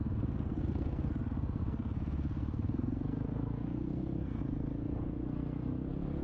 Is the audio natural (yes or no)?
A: no